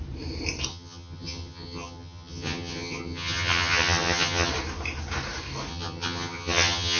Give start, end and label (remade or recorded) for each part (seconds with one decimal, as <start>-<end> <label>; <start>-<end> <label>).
0.0-0.7 recorded; 0.7-4.5 remade; 4.5-5.7 recorded; 5.7-7.0 remade